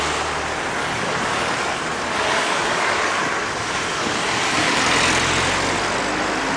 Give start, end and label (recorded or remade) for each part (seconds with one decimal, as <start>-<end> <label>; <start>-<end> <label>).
0.0-0.8 recorded; 0.8-4.8 remade; 4.8-6.6 recorded